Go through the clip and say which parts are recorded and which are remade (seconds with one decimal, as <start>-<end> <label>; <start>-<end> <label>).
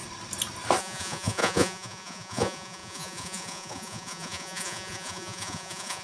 0.0-0.8 recorded; 0.8-6.0 remade